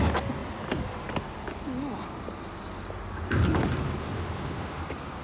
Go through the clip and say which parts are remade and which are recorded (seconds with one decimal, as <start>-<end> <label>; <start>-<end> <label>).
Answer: 0.0-4.0 recorded; 4.0-4.8 remade; 4.8-5.2 recorded